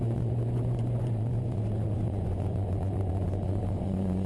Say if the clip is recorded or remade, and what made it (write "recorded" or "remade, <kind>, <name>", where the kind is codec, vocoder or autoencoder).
remade, vocoder, Vocos